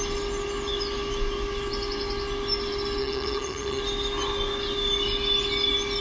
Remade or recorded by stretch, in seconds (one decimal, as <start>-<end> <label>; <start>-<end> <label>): 0.0-3.0 recorded; 3.0-3.8 remade; 3.8-6.0 recorded

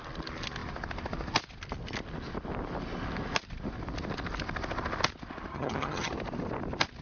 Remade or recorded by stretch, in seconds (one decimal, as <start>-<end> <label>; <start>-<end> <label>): 0.0-5.5 recorded; 5.5-6.1 remade; 6.1-7.0 recorded